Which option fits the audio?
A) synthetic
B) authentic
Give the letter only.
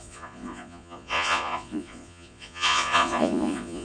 A